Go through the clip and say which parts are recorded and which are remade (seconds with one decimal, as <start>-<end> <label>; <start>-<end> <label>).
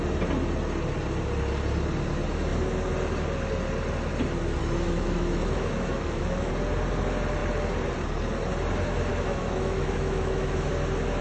0.0-4.6 recorded; 4.6-6.5 remade; 6.5-9.1 recorded; 9.1-10.7 remade; 10.7-11.2 recorded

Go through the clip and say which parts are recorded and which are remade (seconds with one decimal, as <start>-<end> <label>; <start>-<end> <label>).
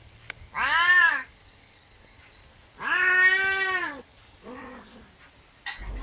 0.0-0.5 remade; 0.5-1.1 recorded; 1.1-1.8 remade; 1.8-4.0 recorded; 4.0-4.9 remade; 4.9-6.0 recorded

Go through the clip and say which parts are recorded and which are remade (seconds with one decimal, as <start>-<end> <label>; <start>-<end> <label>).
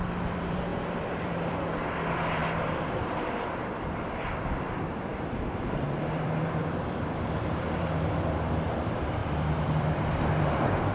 0.0-2.4 remade; 2.4-4.3 recorded; 4.3-10.9 remade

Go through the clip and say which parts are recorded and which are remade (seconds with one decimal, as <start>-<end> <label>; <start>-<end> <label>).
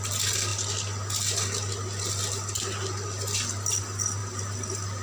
0.0-0.5 recorded; 0.5-3.5 remade; 3.5-4.2 recorded; 4.2-5.0 remade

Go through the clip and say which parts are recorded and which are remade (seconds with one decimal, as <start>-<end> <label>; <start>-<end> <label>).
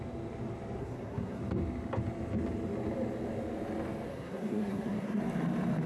0.0-0.8 recorded; 0.8-1.4 remade; 1.4-4.1 recorded; 4.1-5.2 remade; 5.2-5.9 recorded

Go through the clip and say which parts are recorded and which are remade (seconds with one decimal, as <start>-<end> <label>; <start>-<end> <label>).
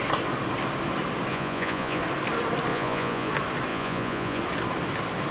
0.0-1.3 recorded; 1.3-2.0 remade; 2.0-2.7 recorded; 2.7-3.3 remade; 3.3-3.7 recorded; 3.7-4.4 remade; 4.4-5.3 recorded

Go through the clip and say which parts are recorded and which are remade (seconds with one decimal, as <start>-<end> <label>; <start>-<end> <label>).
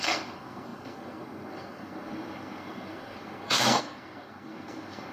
0.0-5.1 remade